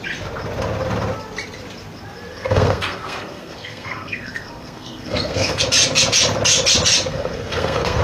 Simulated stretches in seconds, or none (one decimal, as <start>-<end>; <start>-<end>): 2.3-5.6; 7.1-8.0